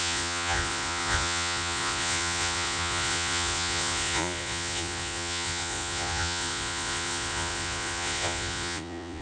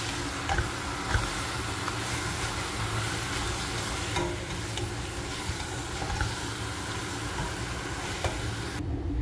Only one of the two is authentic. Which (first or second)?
second